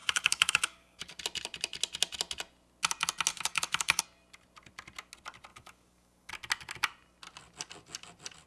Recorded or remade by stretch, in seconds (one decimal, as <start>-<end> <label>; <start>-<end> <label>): 0.0-1.2 remade; 1.2-3.3 recorded; 3.3-4.0 remade; 4.0-5.5 recorded; 5.5-6.3 remade; 6.3-8.5 recorded